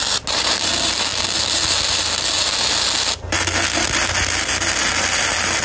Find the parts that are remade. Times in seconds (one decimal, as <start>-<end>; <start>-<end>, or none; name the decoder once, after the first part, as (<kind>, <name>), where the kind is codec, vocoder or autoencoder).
none